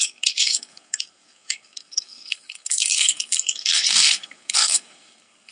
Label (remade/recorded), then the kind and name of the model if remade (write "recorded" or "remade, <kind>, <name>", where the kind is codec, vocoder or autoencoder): remade, codec, SNAC